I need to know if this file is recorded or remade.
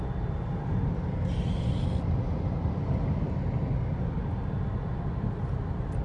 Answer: recorded